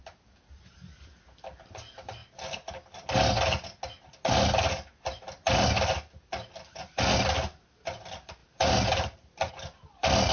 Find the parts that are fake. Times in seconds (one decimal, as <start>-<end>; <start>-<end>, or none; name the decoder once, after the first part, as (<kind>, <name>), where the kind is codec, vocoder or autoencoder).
8.4-9.5 (vocoder, BigVGAN v2)